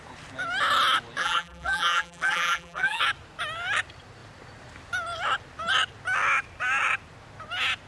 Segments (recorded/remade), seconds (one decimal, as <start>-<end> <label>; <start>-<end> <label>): 0.0-1.2 recorded; 1.2-3.0 remade; 3.0-7.9 recorded